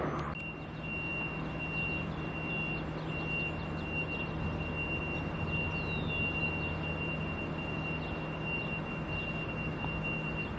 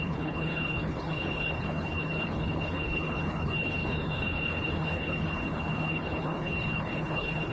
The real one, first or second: first